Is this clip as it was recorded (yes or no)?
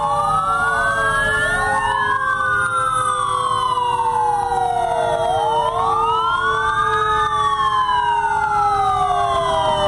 yes